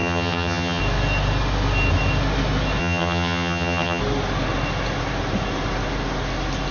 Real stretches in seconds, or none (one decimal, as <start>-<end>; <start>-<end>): 0.8-2.8; 4.0-6.7

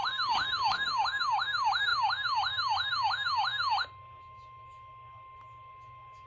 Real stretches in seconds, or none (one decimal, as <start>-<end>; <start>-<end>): 0.0-6.3